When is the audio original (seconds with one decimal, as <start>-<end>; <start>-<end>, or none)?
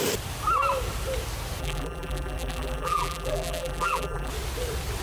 0.0-1.6; 4.3-5.0